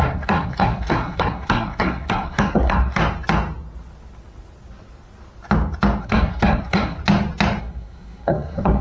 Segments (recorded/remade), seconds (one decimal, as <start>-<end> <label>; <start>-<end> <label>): 0.0-3.0 remade; 3.0-6.0 recorded; 6.0-7.0 remade; 7.0-7.6 recorded; 7.6-8.8 remade